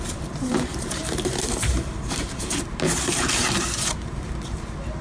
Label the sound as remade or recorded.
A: remade